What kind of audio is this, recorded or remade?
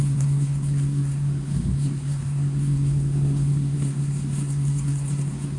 remade